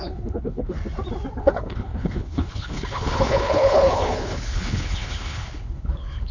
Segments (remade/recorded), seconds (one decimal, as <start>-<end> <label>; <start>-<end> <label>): 0.0-0.8 remade; 0.8-1.4 recorded; 1.4-6.3 remade